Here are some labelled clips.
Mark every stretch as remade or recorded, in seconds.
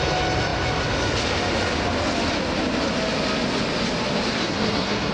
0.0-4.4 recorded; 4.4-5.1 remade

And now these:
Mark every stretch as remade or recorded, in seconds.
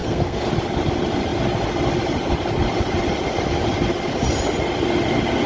0.0-0.5 remade; 0.5-5.5 recorded